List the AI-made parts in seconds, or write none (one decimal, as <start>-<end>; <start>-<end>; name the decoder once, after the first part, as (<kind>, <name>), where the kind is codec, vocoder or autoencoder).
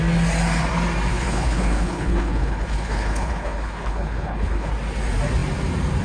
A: 1.1-4.7 (codec, HILCodec)